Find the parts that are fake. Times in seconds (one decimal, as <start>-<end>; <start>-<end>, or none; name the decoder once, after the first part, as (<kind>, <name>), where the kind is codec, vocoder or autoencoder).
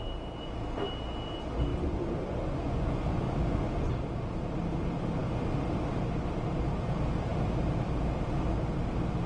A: 1.7-3.9 (vocoder, Vocos)